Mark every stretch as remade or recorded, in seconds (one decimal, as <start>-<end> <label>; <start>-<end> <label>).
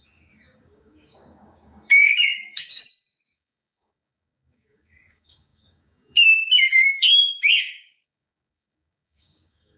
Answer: 0.0-9.8 remade